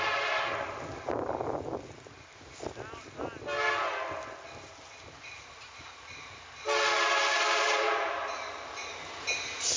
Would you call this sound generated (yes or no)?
no